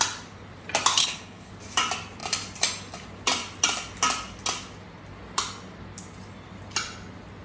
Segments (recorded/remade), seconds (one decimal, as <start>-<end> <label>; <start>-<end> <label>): 0.0-0.9 recorded; 0.9-1.5 remade; 1.5-7.4 recorded